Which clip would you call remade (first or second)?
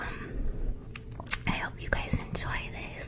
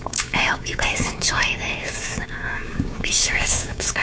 second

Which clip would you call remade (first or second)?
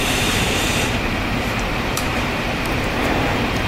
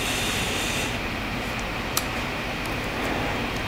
first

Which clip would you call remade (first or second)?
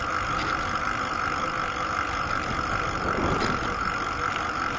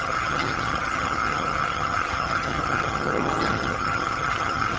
second